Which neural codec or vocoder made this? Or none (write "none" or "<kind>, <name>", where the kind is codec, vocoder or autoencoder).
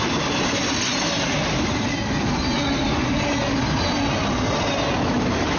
none